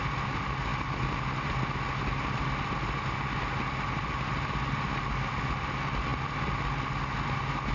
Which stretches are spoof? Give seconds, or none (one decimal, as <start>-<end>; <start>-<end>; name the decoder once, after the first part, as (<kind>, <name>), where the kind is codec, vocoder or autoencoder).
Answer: none